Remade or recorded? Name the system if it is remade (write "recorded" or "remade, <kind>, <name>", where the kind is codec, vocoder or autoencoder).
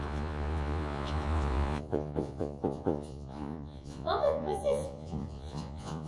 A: remade, vocoder, Vocos